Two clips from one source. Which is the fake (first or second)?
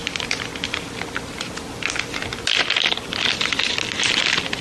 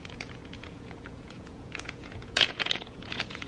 second